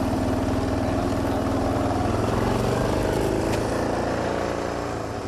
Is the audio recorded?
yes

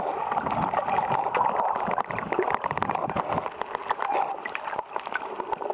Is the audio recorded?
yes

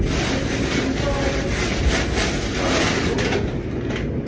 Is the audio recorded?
yes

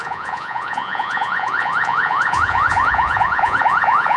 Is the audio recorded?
no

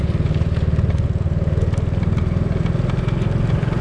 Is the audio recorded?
yes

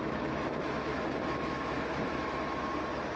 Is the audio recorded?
no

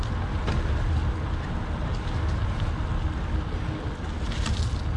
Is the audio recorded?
yes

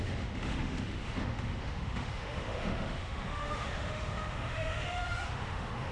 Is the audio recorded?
no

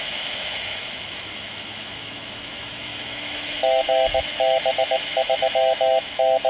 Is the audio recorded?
no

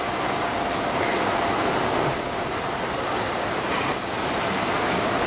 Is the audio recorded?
yes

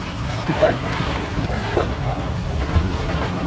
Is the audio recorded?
no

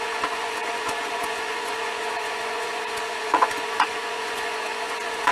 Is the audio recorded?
no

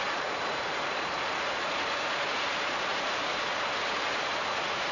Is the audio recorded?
no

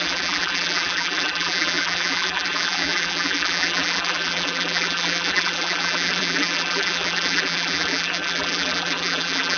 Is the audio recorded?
no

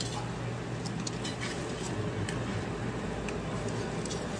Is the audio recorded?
yes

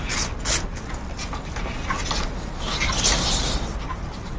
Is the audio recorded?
yes